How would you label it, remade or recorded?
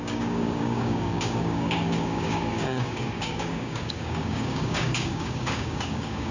remade